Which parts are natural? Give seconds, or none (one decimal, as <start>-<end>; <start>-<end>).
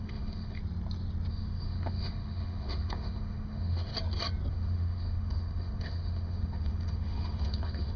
0.6-1.3; 3.9-4.5